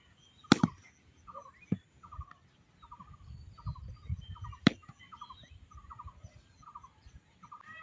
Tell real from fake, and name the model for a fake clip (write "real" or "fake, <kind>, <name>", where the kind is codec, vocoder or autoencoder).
real